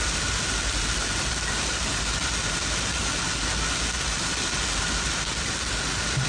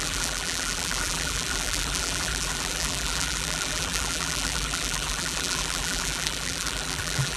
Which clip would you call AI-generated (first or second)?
second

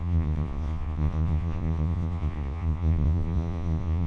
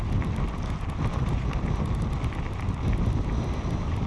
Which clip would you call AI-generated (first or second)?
first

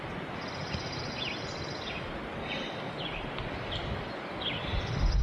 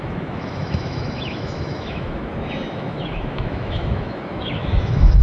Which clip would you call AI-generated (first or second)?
second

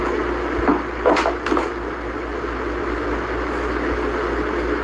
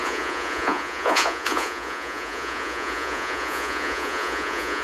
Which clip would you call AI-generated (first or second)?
second